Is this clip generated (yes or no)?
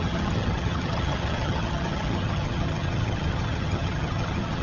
yes